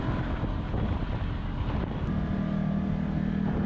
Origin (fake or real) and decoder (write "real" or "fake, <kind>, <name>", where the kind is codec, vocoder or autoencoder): real